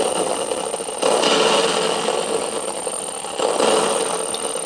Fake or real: real